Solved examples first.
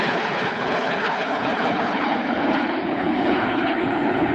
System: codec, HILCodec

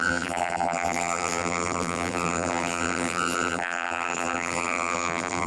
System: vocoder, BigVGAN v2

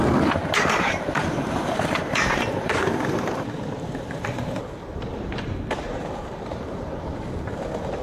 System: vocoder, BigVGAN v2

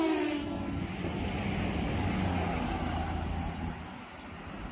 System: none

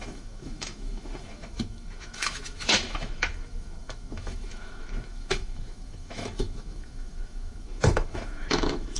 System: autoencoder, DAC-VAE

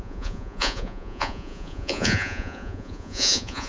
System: vocoder, Vocos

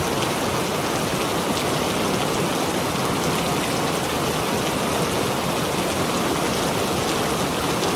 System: none